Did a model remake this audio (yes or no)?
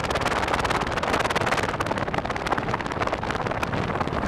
no